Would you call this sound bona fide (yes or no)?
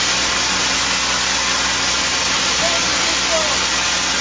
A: no